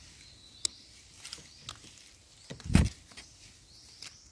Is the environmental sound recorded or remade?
recorded